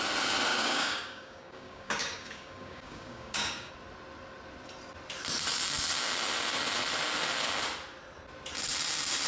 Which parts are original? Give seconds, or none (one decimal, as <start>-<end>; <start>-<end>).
0.0-0.5; 3.7-9.3